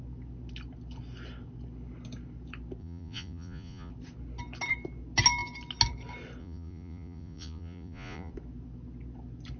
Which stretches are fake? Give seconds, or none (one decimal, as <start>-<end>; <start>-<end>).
2.8-3.9; 6.4-8.3